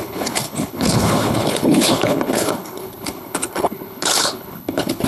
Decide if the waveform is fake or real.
fake